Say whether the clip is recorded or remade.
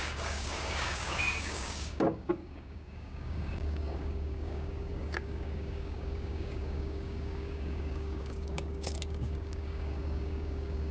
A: remade